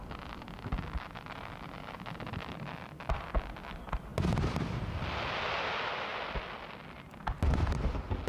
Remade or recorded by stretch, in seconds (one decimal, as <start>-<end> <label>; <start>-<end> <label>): 0.0-8.3 recorded